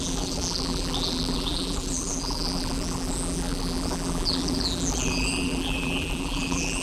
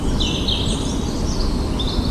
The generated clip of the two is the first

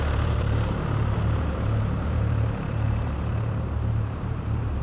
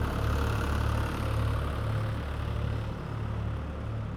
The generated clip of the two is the first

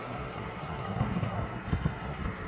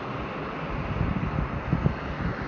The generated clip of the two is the first